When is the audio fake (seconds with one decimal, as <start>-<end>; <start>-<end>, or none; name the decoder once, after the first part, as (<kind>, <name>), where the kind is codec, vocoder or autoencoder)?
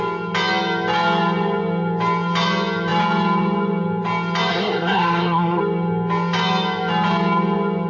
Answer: 4.5-5.6 (codec, SNAC)